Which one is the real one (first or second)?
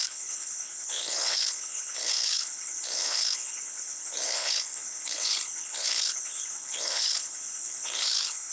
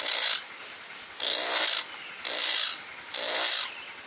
second